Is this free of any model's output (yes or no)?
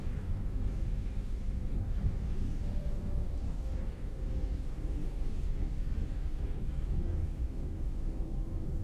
no